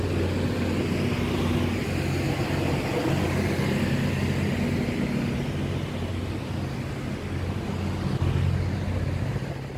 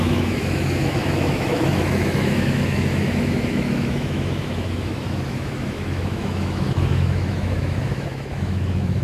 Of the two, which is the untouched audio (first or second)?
first